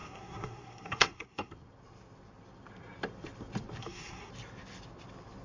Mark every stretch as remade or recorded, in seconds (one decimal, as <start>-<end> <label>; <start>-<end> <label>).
0.0-1.5 remade; 1.5-3.8 recorded; 3.8-4.3 remade; 4.3-5.4 recorded